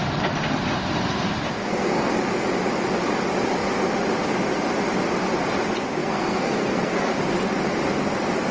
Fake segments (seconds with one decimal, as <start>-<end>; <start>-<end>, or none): 1.6-2.1; 6.0-7.1